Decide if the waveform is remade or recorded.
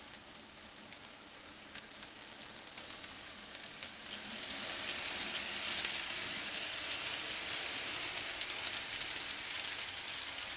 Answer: recorded